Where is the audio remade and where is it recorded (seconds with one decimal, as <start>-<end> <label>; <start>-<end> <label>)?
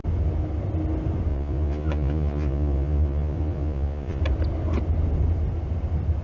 0.0-1.3 recorded; 1.3-4.2 remade; 4.2-6.2 recorded